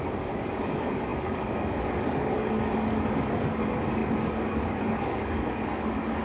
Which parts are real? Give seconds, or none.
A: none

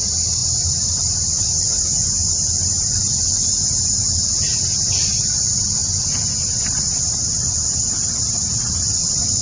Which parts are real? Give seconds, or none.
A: 0.0-9.4

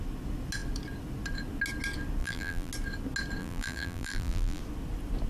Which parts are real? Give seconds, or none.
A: 0.0-2.2; 2.7-3.4; 4.6-5.3

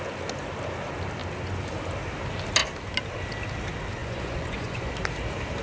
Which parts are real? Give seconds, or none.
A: 0.0-4.0; 4.9-5.6

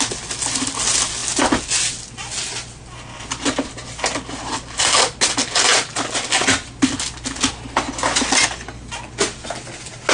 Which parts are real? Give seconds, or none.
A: 0.0-10.1

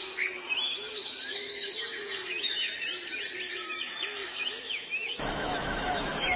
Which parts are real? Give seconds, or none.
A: 2.7-3.5